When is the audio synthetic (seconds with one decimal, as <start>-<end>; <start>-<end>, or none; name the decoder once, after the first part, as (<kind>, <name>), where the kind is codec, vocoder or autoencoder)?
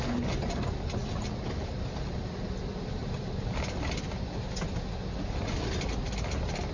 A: none